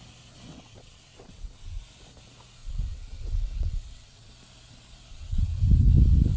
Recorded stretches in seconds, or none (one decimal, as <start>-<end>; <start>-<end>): 0.0-0.5; 1.8-2.6; 4.3-5.1; 5.6-6.4